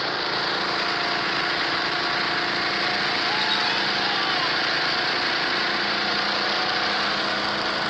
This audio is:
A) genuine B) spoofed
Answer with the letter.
A